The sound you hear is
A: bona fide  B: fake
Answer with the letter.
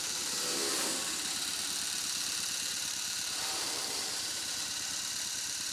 B